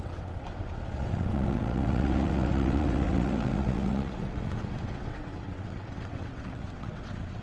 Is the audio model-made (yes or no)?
yes